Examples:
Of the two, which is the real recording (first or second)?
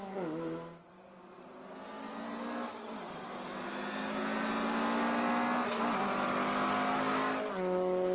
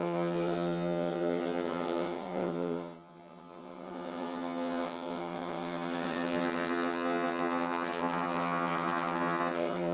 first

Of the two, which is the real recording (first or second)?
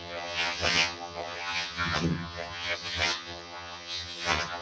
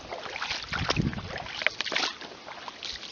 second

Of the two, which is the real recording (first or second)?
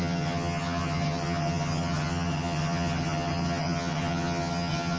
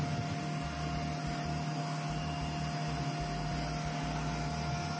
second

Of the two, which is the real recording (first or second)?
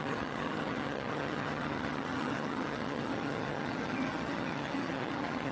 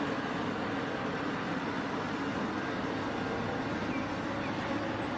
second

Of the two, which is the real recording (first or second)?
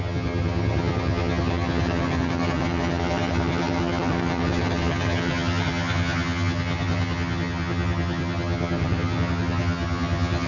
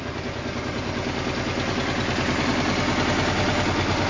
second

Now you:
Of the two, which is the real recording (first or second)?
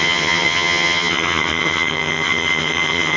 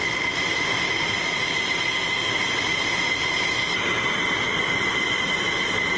second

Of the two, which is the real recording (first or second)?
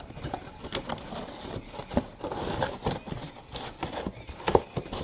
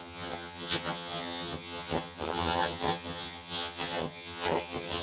first